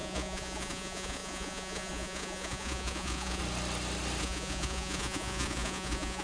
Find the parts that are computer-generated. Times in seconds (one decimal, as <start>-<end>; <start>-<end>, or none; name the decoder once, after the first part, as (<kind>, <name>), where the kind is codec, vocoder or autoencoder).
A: 0.0-3.4 (vocoder, Vocos); 4.2-6.2